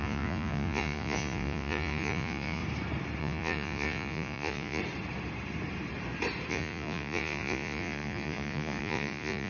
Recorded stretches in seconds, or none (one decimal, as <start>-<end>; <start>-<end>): 2.6-3.2; 4.8-6.5